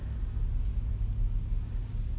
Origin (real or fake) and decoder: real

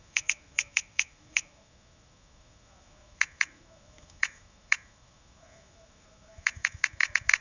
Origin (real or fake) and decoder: fake, autoencoder, DAC-VAE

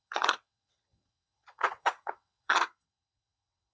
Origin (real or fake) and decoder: fake, vocoder, WaveNeXt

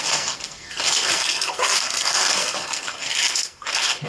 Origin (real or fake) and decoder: fake, codec, SNAC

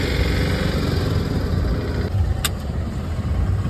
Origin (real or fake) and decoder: real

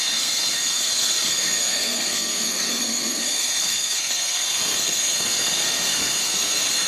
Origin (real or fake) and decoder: fake, codec, SNAC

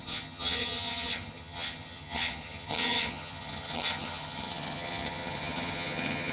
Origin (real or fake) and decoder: fake, vocoder, HiFi-GAN